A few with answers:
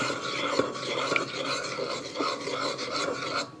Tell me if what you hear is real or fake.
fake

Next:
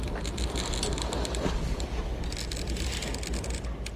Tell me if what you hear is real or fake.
real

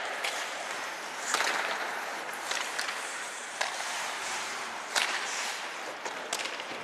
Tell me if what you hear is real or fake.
fake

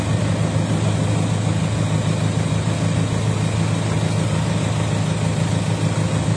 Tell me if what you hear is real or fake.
real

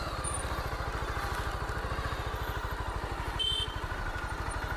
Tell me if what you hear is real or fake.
real